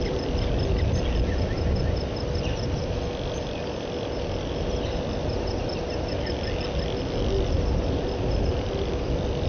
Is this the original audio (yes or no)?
yes